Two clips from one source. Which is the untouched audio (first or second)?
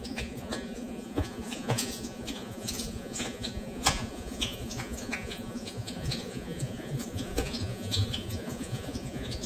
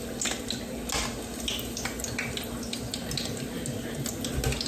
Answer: second